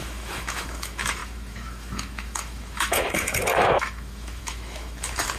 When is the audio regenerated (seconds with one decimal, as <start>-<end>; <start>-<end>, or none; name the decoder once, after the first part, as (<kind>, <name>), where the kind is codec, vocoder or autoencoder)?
0.0-5.4 (autoencoder, DAC-VAE)